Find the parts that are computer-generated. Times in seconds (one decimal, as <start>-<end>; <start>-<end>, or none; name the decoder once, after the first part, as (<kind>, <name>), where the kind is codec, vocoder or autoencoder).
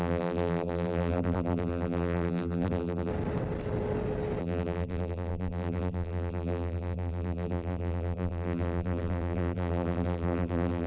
0.0-3.1 (vocoder, BigVGAN v2); 4.4-10.9